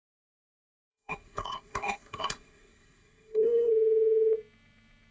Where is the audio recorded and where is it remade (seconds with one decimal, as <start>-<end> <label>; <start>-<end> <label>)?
0.0-0.9 recorded; 0.9-3.7 remade; 3.7-5.1 recorded